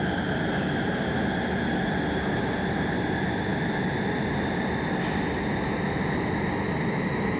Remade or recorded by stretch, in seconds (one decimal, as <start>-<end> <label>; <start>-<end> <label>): 0.0-7.4 recorded